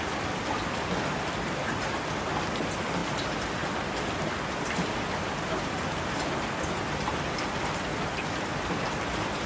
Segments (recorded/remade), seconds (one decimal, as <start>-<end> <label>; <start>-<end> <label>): 0.0-9.5 recorded